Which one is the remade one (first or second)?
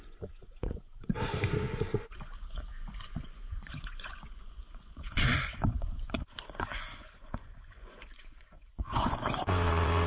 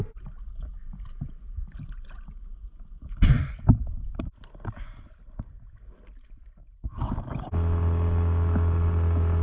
first